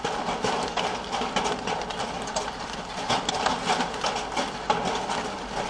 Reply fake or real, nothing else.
real